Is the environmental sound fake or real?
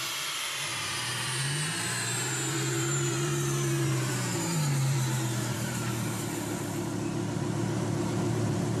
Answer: fake